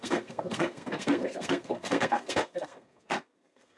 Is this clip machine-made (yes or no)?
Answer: yes